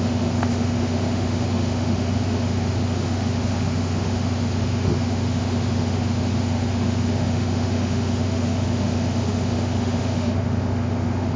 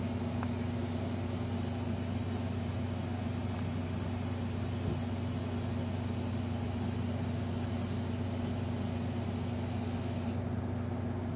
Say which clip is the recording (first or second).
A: second